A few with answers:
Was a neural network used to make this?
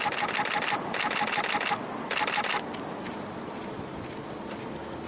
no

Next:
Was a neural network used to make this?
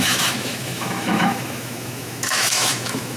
yes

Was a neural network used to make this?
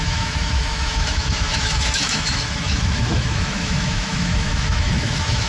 yes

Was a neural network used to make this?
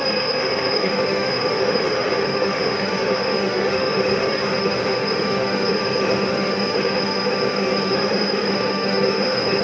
yes